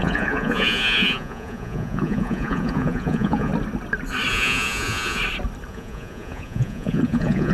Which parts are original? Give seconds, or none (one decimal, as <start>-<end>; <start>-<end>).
3.5-4.3; 5.2-5.7